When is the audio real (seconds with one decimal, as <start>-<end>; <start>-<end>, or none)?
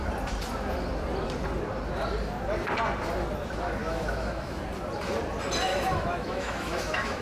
0.0-3.8; 4.6-5.7